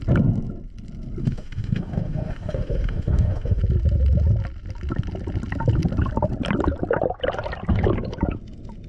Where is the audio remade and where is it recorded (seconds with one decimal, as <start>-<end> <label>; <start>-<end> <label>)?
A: 0.0-1.2 recorded; 1.2-3.6 remade; 3.6-8.9 recorded